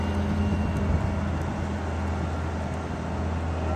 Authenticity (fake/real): real